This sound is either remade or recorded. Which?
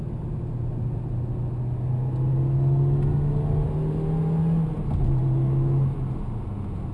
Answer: recorded